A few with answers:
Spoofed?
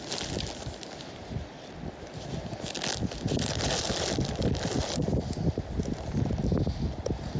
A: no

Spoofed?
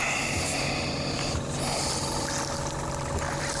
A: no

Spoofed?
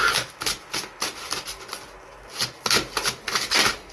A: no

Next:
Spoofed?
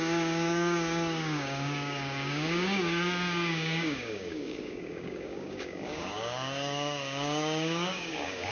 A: yes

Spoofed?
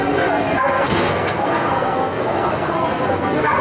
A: yes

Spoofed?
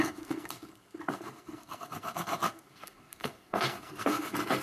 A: yes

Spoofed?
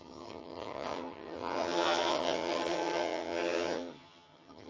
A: yes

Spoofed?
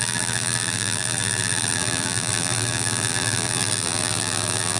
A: yes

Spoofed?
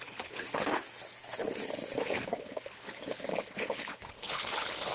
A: yes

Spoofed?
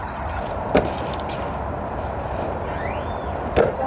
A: no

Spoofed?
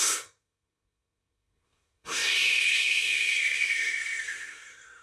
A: yes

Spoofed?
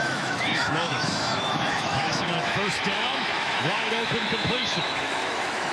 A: yes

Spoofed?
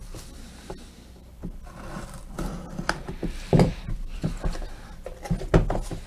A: no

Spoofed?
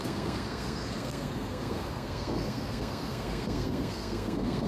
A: yes